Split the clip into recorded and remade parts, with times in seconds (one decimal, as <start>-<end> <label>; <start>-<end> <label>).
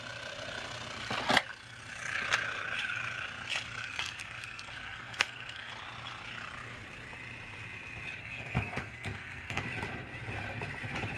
0.0-3.8 recorded; 3.8-5.7 remade; 5.7-8.2 recorded; 8.2-9.6 remade; 9.6-11.2 recorded